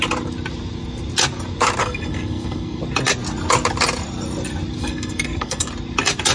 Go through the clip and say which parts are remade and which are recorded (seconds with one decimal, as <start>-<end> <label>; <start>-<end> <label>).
0.0-1.8 recorded; 1.8-2.8 remade; 2.8-4.8 recorded; 4.8-5.7 remade; 5.7-6.3 recorded